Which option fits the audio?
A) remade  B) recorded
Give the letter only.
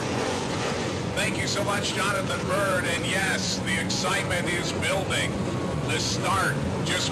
A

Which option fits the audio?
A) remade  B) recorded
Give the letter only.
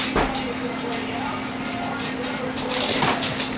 B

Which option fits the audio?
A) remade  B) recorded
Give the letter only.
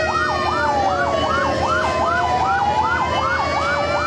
B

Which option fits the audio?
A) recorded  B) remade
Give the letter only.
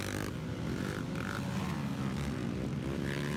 A